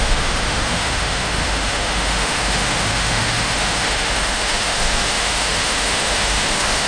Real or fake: fake